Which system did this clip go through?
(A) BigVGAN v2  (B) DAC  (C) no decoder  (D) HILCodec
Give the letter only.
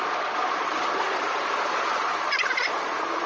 A